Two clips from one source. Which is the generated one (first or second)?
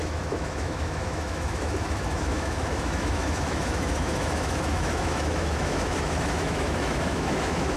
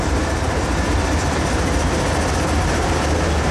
first